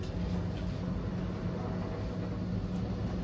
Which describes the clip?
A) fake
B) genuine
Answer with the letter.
B